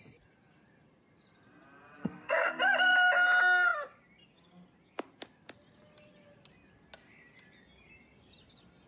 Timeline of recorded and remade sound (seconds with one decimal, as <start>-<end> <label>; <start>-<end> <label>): 0.0-2.0 recorded; 2.0-2.6 remade; 2.6-8.9 recorded